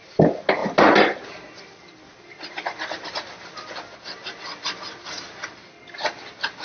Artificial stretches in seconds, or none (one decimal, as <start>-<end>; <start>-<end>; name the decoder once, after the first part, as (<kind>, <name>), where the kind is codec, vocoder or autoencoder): none